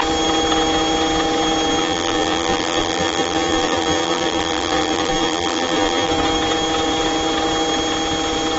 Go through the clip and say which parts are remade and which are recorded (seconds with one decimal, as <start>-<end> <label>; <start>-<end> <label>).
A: 0.0-1.8 recorded; 1.8-6.1 remade; 6.1-8.6 recorded